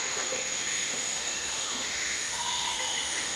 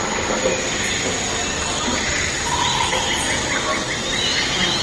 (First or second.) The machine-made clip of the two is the first